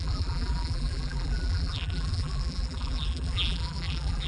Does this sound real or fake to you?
fake